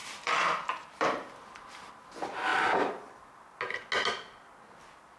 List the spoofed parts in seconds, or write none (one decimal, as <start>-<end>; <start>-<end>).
0.0-1.9